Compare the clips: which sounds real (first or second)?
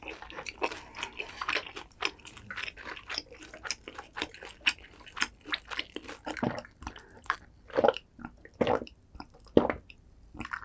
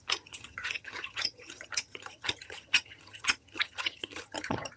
first